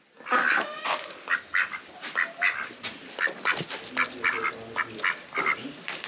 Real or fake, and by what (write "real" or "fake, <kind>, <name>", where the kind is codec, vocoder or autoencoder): real